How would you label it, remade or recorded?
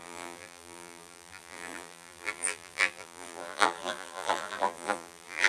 remade